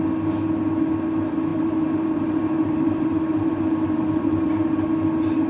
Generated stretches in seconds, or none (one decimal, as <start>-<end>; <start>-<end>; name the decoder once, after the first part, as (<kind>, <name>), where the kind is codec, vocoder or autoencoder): 1.5-4.8 (vocoder, BigVGAN v2)